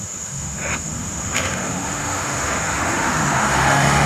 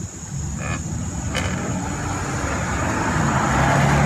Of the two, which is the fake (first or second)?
first